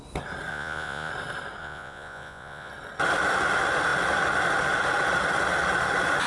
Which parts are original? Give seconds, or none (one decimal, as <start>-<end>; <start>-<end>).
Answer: 0.0-0.5; 1.1-1.6; 2.7-6.3